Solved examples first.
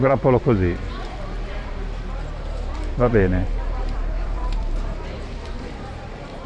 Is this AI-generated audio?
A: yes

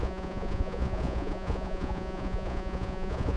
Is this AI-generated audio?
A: yes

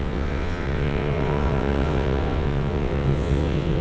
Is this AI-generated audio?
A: yes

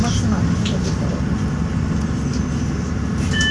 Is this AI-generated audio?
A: no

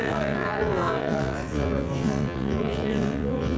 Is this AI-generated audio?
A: yes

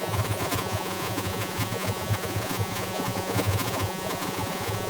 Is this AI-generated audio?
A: yes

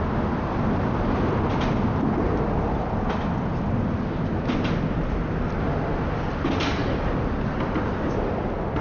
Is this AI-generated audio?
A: no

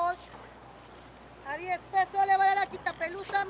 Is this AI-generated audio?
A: no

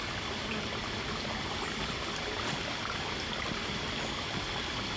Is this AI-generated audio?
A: no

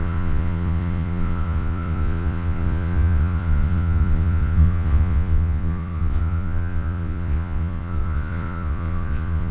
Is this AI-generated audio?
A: yes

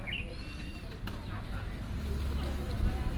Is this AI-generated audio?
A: no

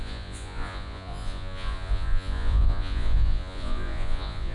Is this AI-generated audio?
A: yes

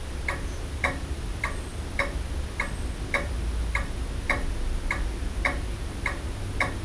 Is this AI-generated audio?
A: no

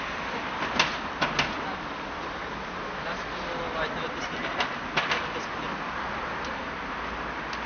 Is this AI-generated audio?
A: no